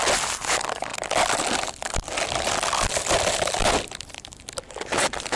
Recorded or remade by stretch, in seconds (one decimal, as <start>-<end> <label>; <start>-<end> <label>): 0.0-5.4 recorded